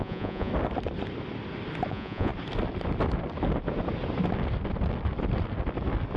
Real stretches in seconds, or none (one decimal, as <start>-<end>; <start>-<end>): 0.5-1.9; 2.3-6.2